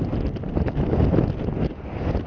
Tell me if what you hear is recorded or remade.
recorded